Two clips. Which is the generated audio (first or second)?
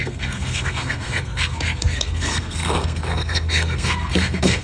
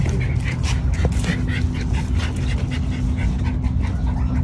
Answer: first